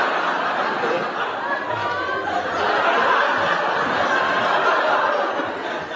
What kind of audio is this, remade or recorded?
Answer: recorded